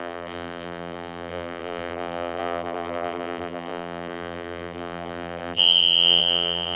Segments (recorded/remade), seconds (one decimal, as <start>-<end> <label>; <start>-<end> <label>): 0.0-6.8 remade